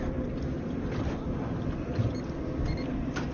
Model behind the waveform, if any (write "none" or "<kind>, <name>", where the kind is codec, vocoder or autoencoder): vocoder, BigVGAN v2